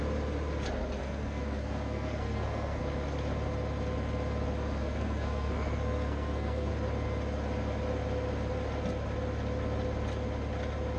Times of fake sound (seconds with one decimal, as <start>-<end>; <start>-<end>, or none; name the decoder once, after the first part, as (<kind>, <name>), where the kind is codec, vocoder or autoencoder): 1.0-2.8 (codec, SNAC); 4.8-6.7